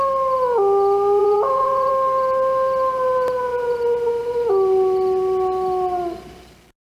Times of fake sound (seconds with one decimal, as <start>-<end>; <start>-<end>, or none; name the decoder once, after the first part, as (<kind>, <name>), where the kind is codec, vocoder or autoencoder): 1.2-1.9 (vocoder, Vocos)